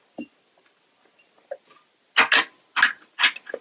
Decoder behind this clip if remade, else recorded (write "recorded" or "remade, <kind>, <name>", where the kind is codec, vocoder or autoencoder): recorded